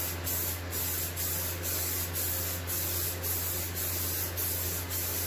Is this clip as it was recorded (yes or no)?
yes